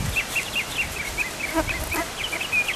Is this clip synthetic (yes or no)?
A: no